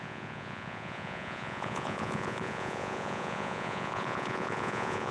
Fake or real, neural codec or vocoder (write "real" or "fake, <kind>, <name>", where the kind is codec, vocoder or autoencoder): fake, vocoder, Vocos